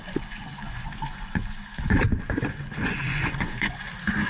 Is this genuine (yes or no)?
no